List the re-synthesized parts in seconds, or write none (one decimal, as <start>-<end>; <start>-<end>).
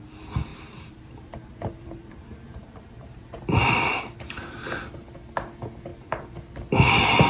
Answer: 0.5-3.4; 5.9-6.5